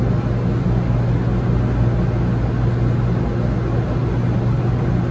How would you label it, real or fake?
real